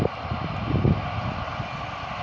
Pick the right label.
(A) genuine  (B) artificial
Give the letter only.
A